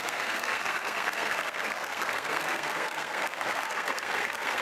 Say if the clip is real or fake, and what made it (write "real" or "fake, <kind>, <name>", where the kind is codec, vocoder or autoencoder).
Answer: fake, codec, SNAC